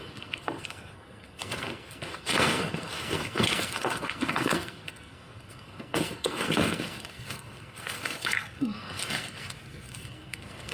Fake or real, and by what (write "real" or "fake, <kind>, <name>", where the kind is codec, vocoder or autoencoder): fake, codec, SNAC